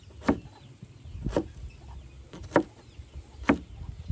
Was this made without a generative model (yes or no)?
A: yes